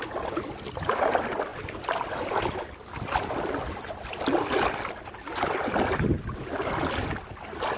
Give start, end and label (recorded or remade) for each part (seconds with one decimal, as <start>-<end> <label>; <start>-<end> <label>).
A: 0.0-7.8 recorded